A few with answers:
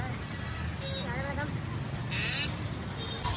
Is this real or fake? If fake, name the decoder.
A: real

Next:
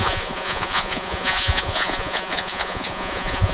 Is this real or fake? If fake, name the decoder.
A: fake, vocoder, Vocos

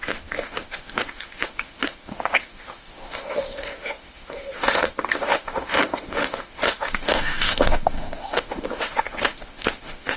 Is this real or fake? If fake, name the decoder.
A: fake, autoencoder, DAC-VAE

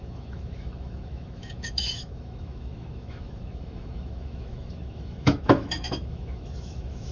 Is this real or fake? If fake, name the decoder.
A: fake, autoencoder, DAC-VAE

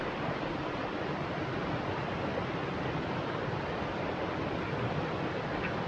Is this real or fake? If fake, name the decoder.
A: real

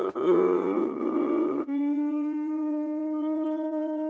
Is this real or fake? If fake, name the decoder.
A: fake, vocoder, WaveNeXt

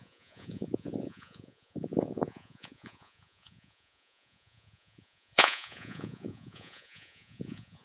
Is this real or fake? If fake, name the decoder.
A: fake, vocoder, Vocos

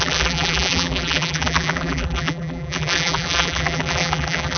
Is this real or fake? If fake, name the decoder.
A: fake, vocoder, BigVGAN v2